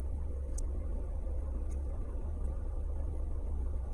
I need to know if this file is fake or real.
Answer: fake